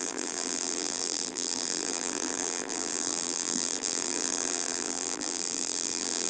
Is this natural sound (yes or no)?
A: no